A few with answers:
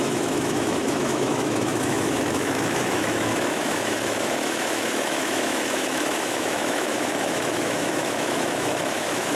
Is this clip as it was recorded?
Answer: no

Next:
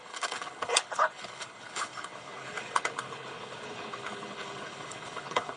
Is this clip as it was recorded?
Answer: no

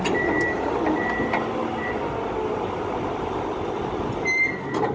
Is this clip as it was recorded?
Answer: yes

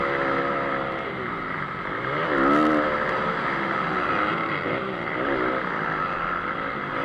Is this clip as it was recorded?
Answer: yes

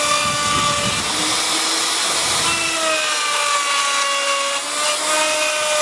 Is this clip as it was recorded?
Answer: yes